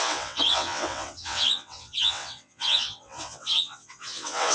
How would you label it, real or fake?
fake